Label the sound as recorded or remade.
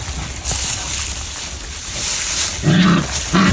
recorded